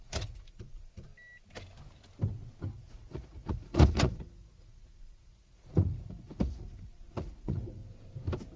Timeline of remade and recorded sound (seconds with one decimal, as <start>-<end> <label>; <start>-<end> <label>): 0.0-1.1 remade; 1.1-2.7 recorded; 2.7-7.8 remade; 7.8-8.6 recorded